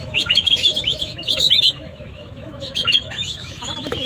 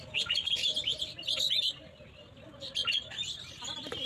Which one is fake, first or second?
first